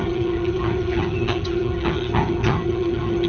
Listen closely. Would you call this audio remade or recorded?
remade